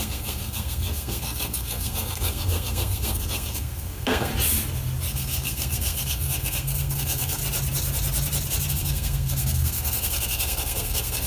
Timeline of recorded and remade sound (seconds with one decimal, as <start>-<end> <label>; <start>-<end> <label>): 0.0-4.3 remade; 4.3-5.1 recorded; 5.1-7.4 remade; 7.4-8.7 recorded; 8.7-11.3 remade

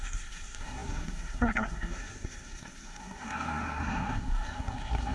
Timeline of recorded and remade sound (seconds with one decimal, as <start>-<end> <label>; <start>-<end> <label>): 0.0-5.1 remade

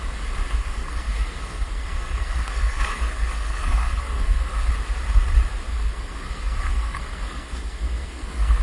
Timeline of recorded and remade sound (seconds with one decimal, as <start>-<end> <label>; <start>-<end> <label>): 0.0-0.6 recorded; 0.6-4.7 remade; 4.7-5.7 recorded; 5.7-8.6 remade

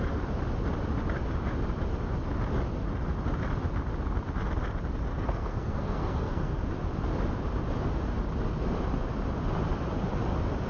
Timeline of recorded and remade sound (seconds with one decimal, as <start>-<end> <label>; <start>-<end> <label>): 0.0-5.1 recorded; 5.1-6.6 remade; 6.6-10.7 recorded